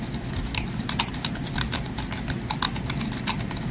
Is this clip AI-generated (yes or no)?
no